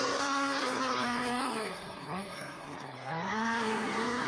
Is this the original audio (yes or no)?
no